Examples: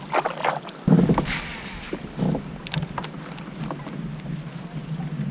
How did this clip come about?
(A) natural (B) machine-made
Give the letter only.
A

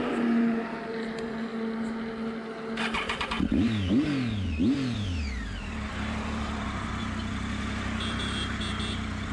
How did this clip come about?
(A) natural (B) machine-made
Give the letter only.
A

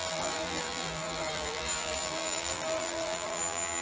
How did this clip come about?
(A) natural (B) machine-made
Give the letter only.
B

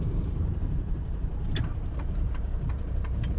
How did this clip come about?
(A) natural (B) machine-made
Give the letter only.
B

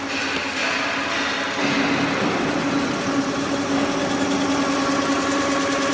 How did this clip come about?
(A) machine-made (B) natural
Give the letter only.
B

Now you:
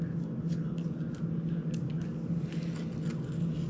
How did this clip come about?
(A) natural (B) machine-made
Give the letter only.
A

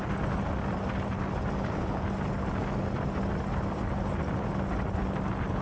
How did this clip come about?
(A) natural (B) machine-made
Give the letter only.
A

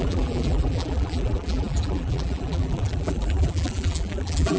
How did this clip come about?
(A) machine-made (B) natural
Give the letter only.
A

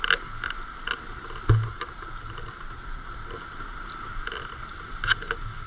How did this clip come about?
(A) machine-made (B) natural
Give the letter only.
B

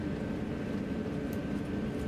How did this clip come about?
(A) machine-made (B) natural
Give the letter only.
B